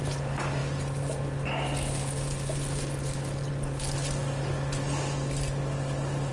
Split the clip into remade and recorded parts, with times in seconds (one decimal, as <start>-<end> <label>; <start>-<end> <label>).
0.0-6.3 recorded